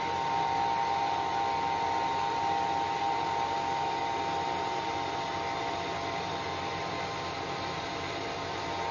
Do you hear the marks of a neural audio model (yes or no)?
no